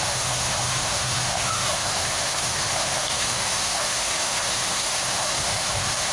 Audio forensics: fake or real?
fake